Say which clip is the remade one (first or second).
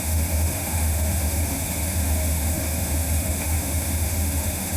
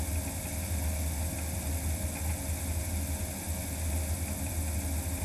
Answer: first